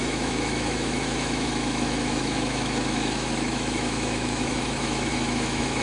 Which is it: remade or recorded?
remade